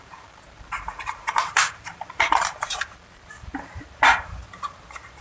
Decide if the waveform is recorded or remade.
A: remade